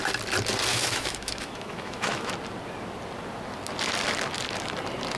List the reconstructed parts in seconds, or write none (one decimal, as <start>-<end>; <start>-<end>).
0.7-2.3